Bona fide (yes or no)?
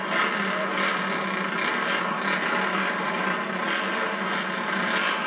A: yes